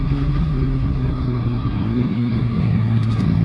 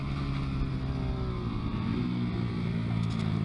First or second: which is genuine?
second